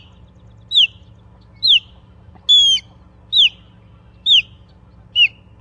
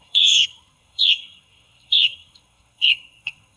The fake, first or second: second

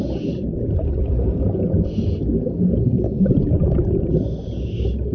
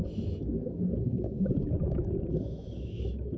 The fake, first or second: second